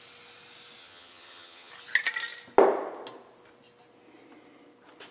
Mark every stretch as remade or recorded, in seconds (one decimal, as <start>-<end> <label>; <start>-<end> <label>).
0.0-0.8 recorded; 0.8-1.7 remade; 1.7-5.1 recorded